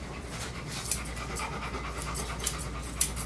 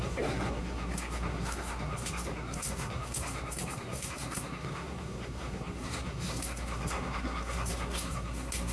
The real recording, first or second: first